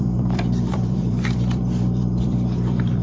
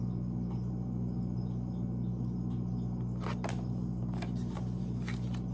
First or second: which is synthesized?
first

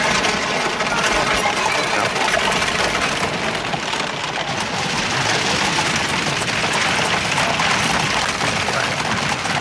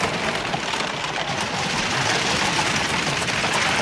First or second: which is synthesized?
second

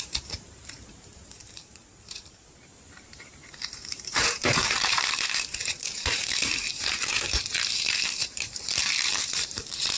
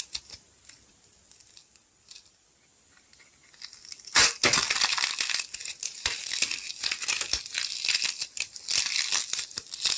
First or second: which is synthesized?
first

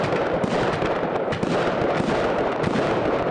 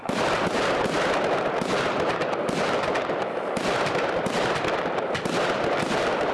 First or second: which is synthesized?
second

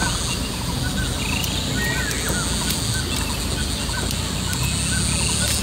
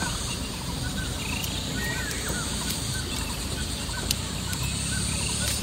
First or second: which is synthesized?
second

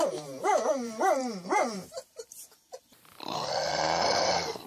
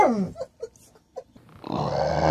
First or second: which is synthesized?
first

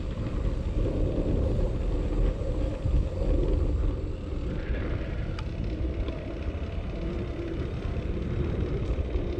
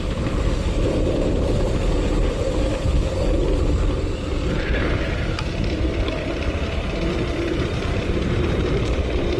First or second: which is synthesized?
second